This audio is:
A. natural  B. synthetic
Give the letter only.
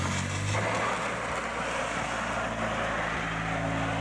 A